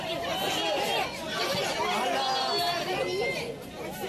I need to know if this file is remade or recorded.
recorded